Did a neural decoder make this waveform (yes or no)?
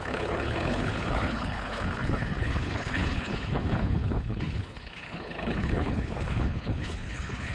yes